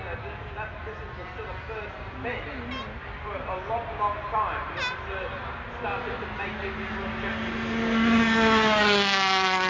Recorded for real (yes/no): yes